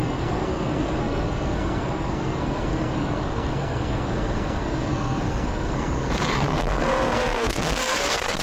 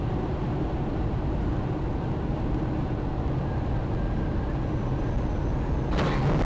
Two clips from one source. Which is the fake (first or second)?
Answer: first